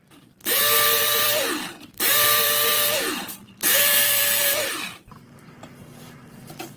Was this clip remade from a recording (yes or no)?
yes